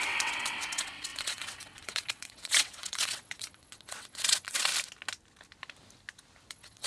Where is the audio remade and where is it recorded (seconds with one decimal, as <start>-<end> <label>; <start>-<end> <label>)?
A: 0.0-4.7 remade; 4.7-6.5 recorded; 6.5-6.9 remade